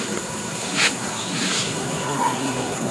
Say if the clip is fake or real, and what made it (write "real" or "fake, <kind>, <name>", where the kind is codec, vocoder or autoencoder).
fake, codec, SNAC